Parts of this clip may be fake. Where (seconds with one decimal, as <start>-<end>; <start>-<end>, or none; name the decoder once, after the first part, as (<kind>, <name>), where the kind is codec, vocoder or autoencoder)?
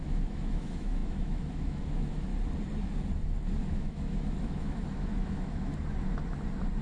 0.0-2.3 (autoencoder, DAC-VAE); 3.6-5.7